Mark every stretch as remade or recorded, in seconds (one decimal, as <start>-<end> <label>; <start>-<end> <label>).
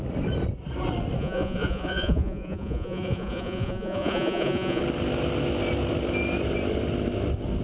0.0-1.2 recorded; 1.2-4.8 remade; 4.8-7.6 recorded